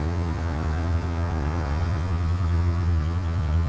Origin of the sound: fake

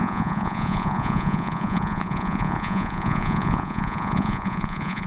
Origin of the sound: fake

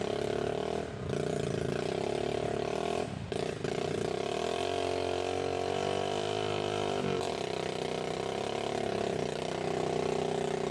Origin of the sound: real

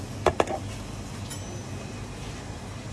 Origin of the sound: real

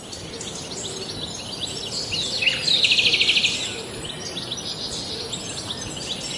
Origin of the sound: real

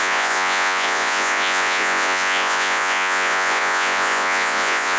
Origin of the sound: fake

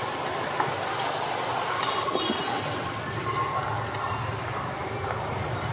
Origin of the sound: real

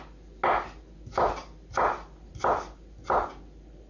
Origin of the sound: real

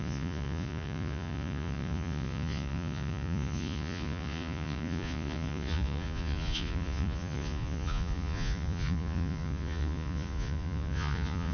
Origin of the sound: fake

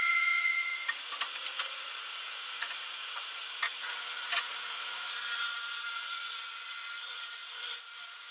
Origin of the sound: fake